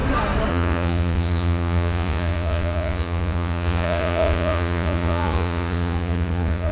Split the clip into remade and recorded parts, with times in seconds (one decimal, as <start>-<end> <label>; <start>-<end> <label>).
0.0-0.5 recorded; 0.5-6.7 remade